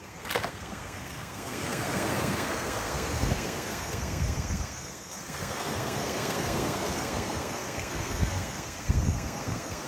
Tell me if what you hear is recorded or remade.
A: remade